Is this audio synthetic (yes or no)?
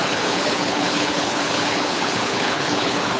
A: yes